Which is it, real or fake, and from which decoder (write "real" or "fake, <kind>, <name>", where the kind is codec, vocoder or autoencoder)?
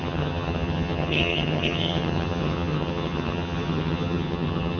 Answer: fake, vocoder, HiFi-GAN